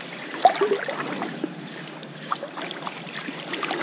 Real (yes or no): yes